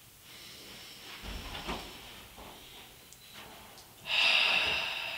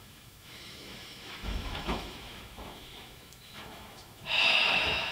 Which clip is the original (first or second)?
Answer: first